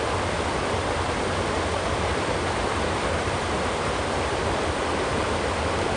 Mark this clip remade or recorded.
recorded